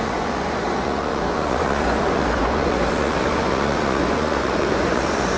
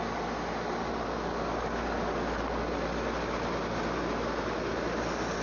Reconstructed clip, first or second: first